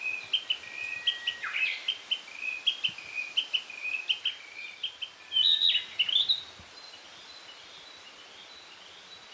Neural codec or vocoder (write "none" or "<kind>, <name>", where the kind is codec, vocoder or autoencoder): none